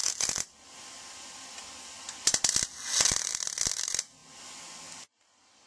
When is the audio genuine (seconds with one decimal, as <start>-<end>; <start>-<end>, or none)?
0.0-5.7